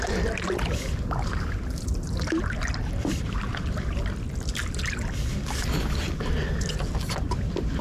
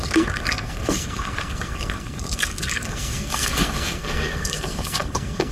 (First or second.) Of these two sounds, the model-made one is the second